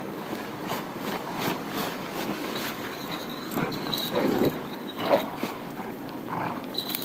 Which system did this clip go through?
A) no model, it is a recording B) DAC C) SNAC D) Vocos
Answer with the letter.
B